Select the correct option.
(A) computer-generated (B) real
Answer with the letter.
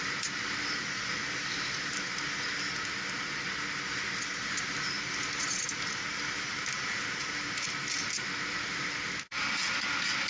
B